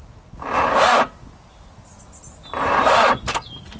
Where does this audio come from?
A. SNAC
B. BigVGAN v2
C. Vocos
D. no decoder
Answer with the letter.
D